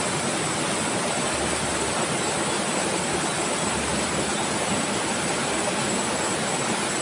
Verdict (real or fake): real